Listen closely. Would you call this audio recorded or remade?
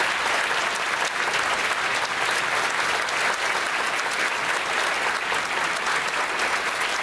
recorded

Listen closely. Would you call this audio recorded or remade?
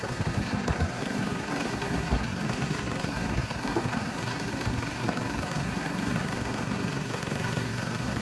remade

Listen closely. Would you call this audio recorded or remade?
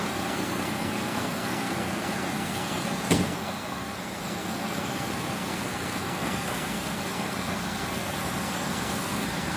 remade